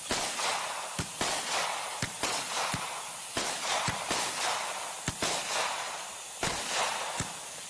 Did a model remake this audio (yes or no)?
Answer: no